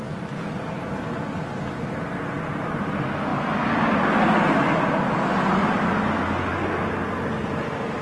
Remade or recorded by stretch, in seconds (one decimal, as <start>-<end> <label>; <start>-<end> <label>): 0.0-8.0 recorded